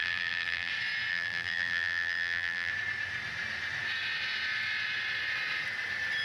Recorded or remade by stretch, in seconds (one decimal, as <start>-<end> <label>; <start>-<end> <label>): 0.0-0.7 remade; 0.7-1.1 recorded; 1.1-2.7 remade; 2.7-6.2 recorded